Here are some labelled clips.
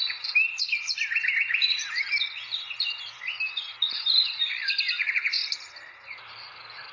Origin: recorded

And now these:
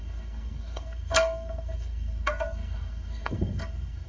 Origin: remade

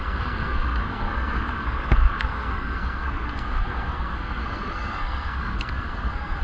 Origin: remade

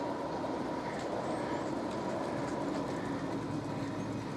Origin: recorded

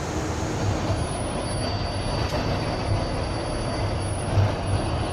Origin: recorded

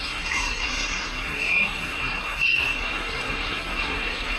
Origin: remade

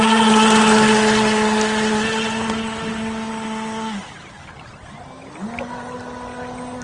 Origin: recorded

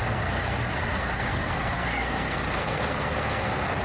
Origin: remade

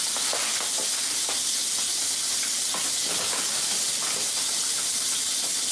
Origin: recorded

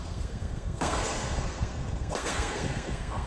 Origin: remade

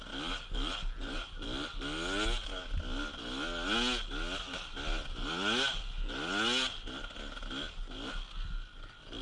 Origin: recorded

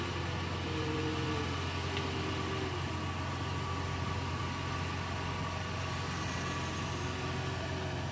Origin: recorded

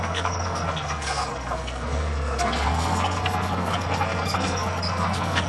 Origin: remade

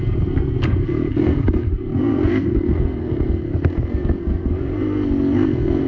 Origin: remade